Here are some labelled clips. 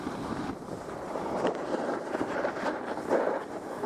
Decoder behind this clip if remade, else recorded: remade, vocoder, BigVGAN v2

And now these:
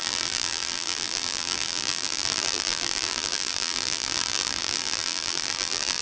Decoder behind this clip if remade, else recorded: remade, vocoder, BigVGAN v2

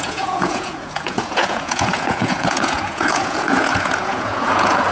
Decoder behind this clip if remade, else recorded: remade, vocoder, Vocos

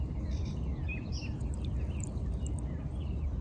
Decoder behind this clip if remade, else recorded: recorded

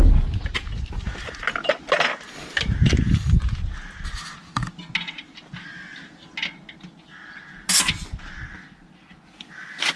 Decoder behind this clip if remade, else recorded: recorded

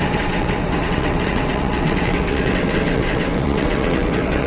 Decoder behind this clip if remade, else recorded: remade, vocoder, WaveNeXt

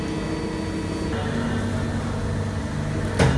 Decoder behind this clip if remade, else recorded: recorded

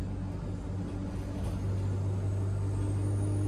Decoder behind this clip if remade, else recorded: recorded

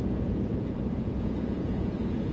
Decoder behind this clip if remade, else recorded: remade, vocoder, Vocos